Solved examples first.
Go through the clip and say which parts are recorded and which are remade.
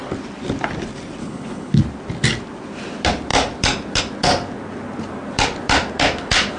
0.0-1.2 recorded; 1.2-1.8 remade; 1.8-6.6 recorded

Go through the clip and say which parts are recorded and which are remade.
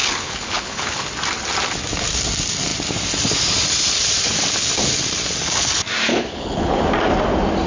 0.0-1.1 remade; 1.1-6.1 recorded; 6.1-6.8 remade; 6.8-7.7 recorded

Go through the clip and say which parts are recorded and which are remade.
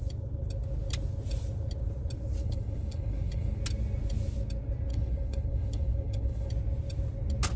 0.0-2.4 recorded; 2.4-3.6 remade; 3.6-4.9 recorded; 4.9-6.5 remade; 6.5-7.6 recorded